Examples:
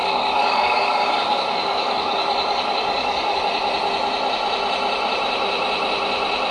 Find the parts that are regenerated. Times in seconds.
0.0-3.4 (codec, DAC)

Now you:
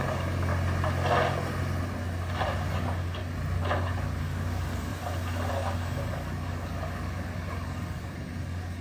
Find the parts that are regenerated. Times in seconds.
0.0-0.5 (codec, DAC); 2.7-3.2; 4.2-4.9; 5.5-8.8

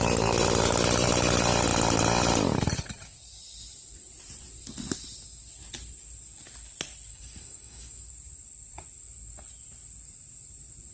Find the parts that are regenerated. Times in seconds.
7.1-8.1 (codec, DAC)

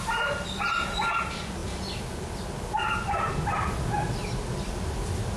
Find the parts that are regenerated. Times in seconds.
none

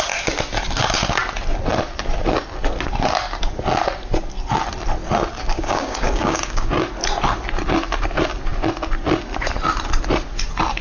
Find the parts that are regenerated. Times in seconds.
5.5-6.7 (codec, DAC)

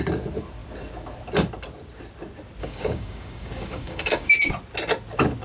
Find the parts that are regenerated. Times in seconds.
2.6-4.3 (codec, DAC)

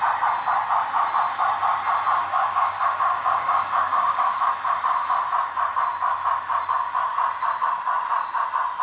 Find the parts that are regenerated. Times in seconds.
2.2-4.5 (codec, DAC)